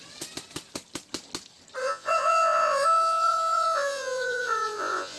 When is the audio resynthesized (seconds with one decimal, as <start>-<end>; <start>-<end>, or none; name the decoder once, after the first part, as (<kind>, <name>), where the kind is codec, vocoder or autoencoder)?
1.8-5.2 (vocoder, Vocos)